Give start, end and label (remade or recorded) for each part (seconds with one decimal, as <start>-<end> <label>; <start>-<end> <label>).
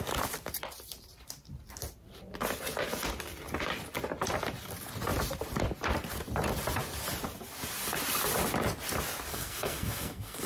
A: 0.0-9.3 recorded; 9.3-10.5 remade